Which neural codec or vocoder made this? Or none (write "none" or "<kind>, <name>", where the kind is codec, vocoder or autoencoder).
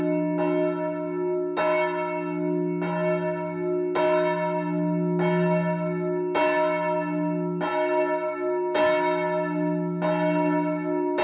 none